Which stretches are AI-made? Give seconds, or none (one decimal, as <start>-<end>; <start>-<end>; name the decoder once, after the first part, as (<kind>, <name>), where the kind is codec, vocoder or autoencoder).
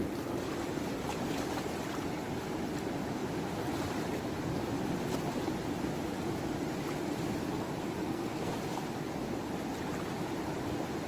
8.0-8.6 (codec, SNAC)